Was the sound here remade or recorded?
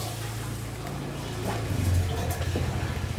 recorded